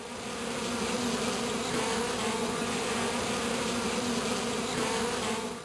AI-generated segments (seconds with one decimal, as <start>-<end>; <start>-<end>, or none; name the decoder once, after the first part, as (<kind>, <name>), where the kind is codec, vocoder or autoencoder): 2.4-3.1 (vocoder, Vocos)